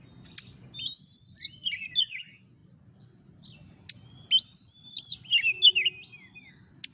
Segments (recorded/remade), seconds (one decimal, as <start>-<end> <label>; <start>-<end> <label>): 0.0-6.9 recorded